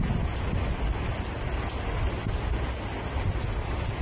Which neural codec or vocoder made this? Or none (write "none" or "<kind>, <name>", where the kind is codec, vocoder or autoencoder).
none